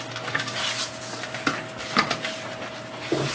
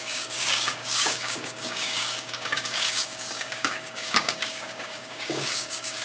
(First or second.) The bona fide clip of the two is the first